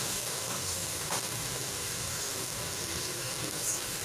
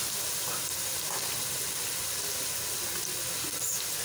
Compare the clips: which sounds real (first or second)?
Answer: second